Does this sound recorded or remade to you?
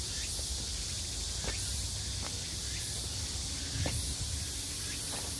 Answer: recorded